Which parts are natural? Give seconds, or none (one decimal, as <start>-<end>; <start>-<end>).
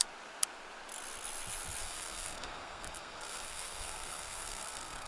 0.0-1.8